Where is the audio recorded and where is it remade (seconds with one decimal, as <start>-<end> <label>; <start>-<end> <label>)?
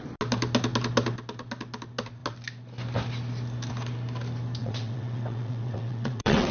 0.0-4.6 recorded; 4.6-6.5 remade